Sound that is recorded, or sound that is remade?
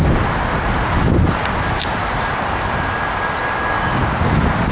recorded